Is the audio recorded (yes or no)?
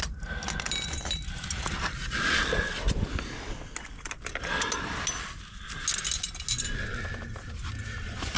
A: yes